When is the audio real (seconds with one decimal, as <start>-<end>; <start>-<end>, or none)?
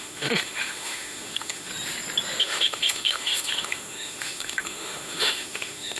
1.7-2.4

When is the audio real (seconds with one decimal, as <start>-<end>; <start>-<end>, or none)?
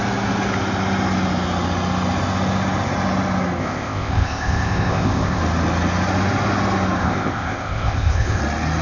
0.0-3.6; 5.4-7.0; 8.4-8.8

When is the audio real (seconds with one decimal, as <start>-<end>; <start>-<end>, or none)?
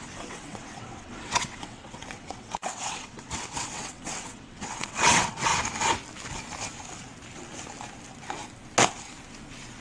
5.5-9.8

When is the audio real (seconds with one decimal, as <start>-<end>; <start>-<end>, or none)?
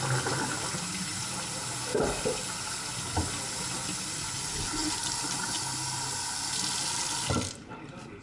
0.0-8.2